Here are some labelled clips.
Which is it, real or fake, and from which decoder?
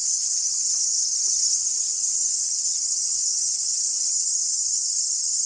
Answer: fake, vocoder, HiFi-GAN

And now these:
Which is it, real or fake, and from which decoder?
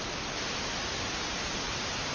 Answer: real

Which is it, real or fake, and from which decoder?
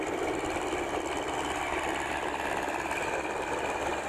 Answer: real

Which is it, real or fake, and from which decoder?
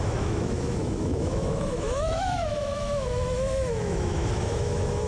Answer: fake, autoencoder, DAC-VAE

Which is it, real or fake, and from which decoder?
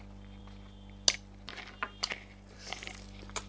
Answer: real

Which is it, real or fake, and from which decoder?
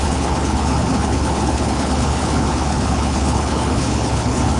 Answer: fake, codec, HILCodec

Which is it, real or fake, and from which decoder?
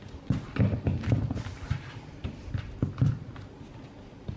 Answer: real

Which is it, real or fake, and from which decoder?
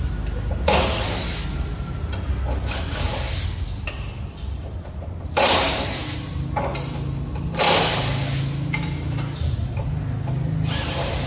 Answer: real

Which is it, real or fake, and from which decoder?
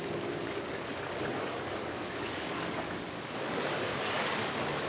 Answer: fake, codec, DAC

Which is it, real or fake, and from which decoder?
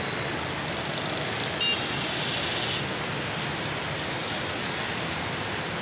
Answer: real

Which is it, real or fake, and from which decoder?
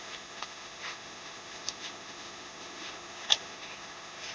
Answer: fake, autoencoder, DAC-VAE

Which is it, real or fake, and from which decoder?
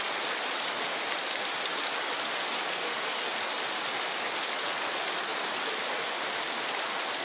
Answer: real